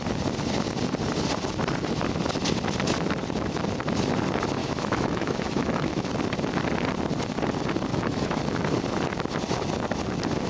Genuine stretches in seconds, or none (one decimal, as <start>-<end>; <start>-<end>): 0.0-4.6; 6.1-7.9; 8.4-10.5